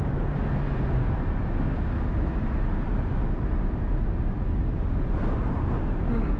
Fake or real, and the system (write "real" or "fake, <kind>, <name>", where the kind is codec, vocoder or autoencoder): real